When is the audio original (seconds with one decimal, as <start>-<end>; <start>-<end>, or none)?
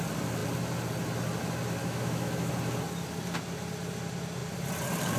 0.0-1.8; 2.5-5.2